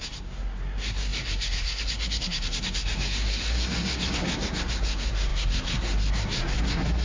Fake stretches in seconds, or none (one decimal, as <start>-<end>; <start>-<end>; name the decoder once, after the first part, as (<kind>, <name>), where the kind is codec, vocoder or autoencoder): 0.0-7.0 (codec, SNAC)